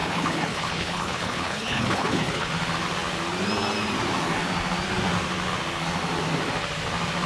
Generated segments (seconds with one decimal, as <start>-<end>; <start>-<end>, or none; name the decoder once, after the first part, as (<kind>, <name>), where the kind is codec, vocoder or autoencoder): 0.0-2.5 (codec, HILCodec)